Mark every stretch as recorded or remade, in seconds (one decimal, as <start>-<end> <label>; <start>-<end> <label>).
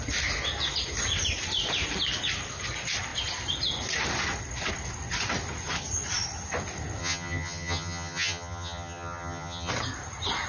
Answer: 0.0-7.0 recorded; 7.0-9.7 remade; 9.7-10.5 recorded